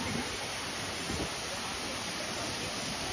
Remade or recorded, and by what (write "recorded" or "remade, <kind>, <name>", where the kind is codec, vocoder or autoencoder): recorded